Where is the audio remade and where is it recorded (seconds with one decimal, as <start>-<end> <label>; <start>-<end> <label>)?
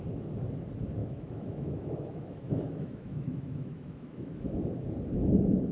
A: 0.0-1.0 recorded; 1.0-4.4 remade; 4.4-5.7 recorded